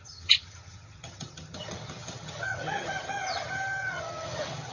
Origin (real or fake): fake